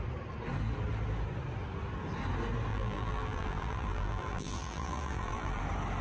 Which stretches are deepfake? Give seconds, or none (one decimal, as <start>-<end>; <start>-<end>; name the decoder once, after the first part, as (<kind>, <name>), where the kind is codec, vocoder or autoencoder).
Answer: 2.7-5.6 (vocoder, BigVGAN v2)